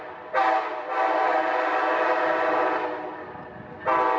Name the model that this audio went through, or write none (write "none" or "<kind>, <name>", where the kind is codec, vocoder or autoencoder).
none